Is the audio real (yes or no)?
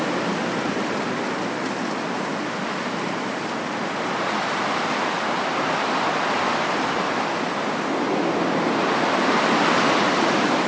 yes